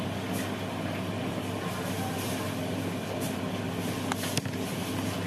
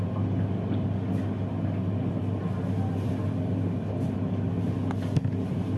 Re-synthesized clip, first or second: first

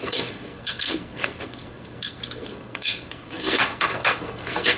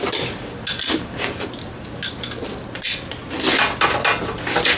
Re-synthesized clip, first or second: first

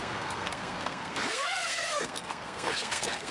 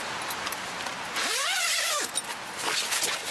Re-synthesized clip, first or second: first